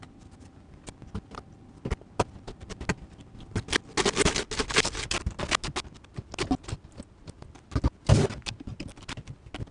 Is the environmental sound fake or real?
real